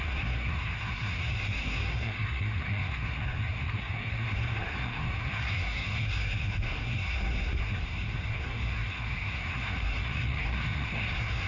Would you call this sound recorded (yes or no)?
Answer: no